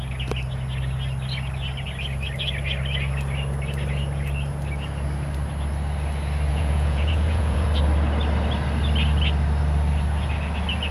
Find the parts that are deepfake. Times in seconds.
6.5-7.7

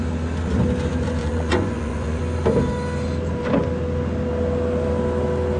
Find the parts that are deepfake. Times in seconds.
1.2-2.2

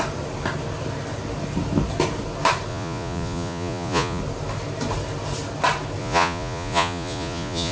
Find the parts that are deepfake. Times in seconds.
2.7-4.2; 6.0-7.7

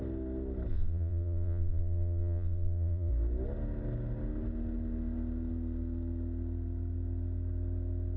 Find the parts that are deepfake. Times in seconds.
0.7-3.1